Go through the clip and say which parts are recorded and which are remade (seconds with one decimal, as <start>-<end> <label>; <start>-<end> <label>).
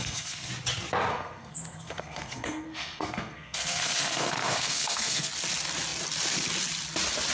0.0-0.5 remade; 0.5-1.1 recorded; 1.1-5.3 remade; 5.3-7.3 recorded